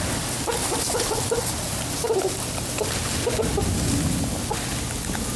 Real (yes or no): yes